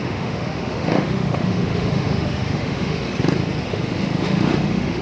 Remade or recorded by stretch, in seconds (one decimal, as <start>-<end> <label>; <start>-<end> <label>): 0.0-3.0 remade; 3.0-3.7 recorded; 3.7-5.0 remade